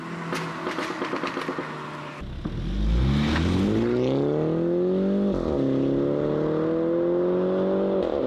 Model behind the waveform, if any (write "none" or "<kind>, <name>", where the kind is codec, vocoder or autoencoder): none